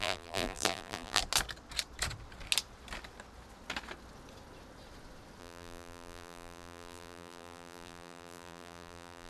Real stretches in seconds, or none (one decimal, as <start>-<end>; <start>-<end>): 1.2-5.4